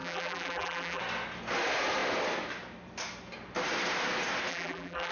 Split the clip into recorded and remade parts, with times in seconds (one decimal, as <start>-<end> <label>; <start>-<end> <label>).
0.0-1.0 remade; 1.0-4.5 recorded; 4.5-5.1 remade